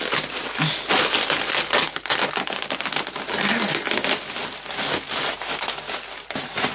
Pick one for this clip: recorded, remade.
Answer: recorded